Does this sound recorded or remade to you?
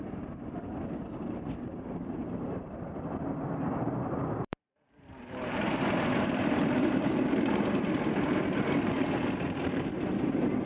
remade